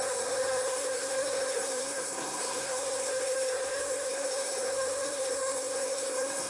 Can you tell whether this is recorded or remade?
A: remade